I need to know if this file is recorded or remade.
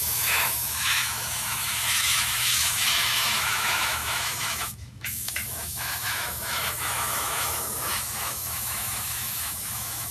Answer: remade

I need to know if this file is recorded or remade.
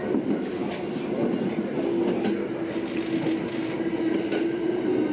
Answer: recorded